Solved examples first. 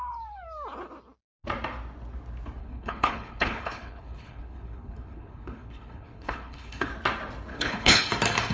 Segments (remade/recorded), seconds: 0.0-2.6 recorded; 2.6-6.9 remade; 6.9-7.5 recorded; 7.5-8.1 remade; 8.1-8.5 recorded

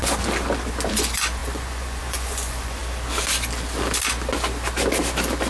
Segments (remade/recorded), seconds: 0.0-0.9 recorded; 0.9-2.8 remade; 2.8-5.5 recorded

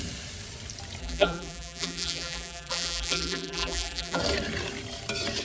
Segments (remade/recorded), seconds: 0.0-1.0 recorded; 1.0-4.2 remade; 4.2-5.4 recorded

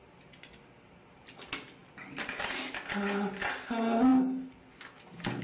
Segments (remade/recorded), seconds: 0.0-5.4 recorded

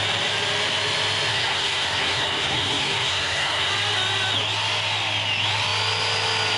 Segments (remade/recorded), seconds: 0.0-1.3 recorded; 1.3-3.7 remade; 3.7-6.6 recorded

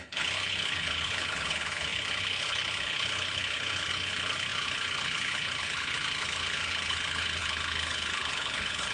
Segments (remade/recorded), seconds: 0.0-8.9 remade